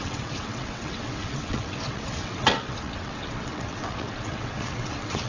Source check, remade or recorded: remade